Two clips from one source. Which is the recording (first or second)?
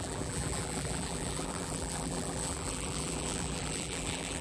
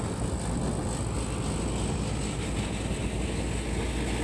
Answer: second